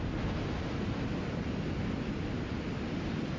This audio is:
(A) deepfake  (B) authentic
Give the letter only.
B